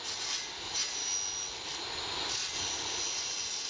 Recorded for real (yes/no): yes